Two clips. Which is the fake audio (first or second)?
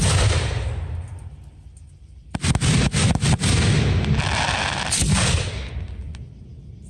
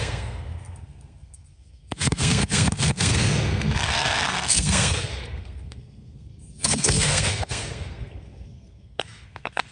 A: second